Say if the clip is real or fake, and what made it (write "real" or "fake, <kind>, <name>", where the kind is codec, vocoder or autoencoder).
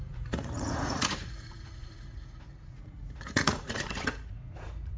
fake, vocoder, Vocos